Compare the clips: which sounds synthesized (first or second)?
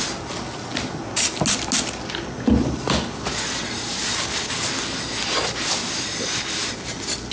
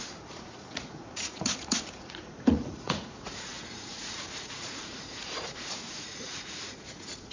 second